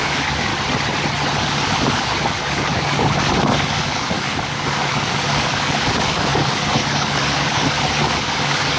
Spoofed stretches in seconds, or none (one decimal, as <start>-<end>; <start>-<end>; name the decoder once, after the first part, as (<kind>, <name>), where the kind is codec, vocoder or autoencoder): 0.0-0.5 (codec, DAC); 1.4-8.8